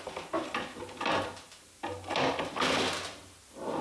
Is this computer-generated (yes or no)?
no